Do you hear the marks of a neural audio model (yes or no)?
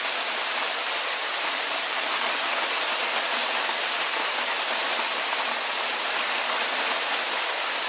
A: no